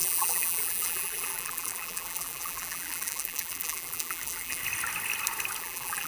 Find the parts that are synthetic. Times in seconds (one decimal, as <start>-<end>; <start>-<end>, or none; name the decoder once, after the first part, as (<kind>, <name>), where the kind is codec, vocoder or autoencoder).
0.0-4.6 (vocoder, BigVGAN v2); 5.6-6.1

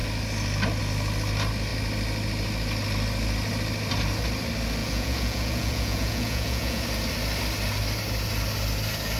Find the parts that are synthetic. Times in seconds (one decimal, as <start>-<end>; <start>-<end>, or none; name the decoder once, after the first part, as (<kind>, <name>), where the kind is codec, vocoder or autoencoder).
4.8-6.8 (vocoder, Vocos)

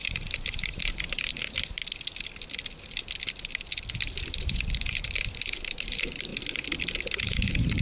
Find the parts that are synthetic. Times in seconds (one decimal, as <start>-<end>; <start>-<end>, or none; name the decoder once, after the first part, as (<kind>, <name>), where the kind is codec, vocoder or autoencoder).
0.0-1.8 (vocoder, BigVGAN v2); 3.9-6.3; 7.2-7.8

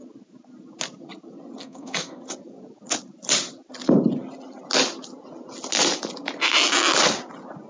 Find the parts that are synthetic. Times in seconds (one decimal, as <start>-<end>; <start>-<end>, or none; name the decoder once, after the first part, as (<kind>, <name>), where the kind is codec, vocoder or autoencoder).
1.6-2.2 (codec, SNAC)

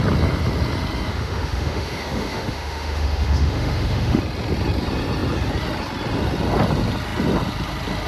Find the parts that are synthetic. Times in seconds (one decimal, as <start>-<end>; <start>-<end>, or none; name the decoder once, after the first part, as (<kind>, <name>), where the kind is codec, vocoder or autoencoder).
1.1-4.2 (autoencoder, DAC-VAE)